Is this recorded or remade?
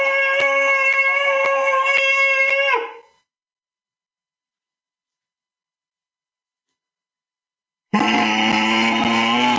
recorded